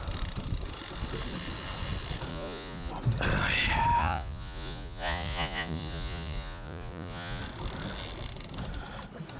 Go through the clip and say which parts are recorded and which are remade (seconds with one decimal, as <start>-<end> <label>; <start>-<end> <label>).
0.0-2.3 recorded; 2.3-2.9 remade; 2.9-4.0 recorded; 4.0-7.4 remade; 7.4-9.4 recorded